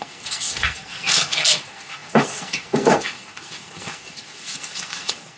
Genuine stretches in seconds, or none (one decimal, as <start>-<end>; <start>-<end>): none